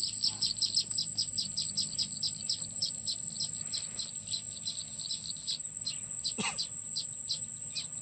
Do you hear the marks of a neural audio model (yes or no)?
no